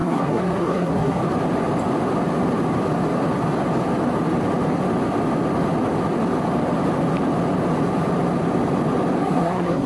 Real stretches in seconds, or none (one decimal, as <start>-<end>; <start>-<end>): 1.2-9.2